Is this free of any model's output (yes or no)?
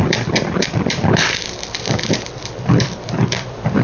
no